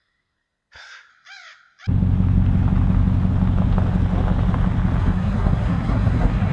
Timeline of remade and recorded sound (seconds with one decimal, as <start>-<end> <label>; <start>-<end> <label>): 0.0-1.1 remade; 1.1-5.0 recorded; 5.0-6.5 remade